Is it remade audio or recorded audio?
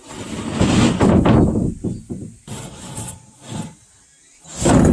recorded